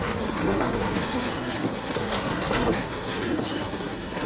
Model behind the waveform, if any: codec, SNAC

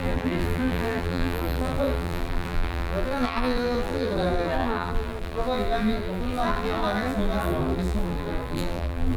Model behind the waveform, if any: vocoder, BigVGAN v2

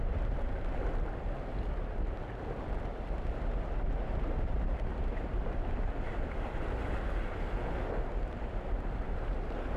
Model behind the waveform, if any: none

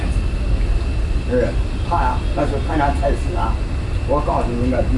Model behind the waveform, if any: none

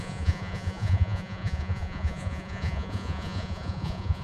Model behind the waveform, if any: vocoder, Vocos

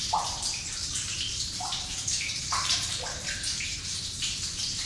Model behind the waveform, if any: vocoder, BigVGAN v2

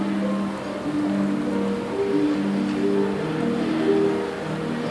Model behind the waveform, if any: none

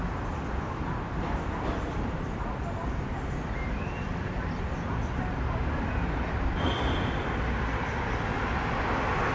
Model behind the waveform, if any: none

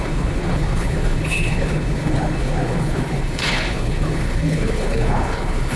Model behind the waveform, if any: codec, HILCodec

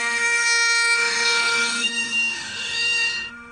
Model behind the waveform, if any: autoencoder, DAC-VAE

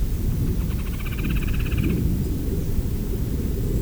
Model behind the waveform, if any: none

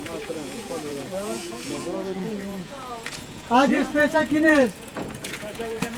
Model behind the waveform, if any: vocoder, Vocos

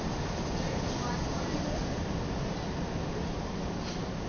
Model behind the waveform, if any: none